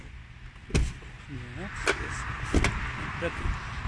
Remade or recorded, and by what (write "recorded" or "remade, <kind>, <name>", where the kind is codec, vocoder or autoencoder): recorded